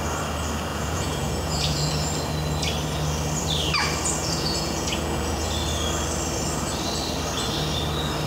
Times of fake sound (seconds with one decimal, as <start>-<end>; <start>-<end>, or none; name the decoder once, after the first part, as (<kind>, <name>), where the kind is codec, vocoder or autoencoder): 0.7-1.9 (vocoder, Vocos); 4.2-5.5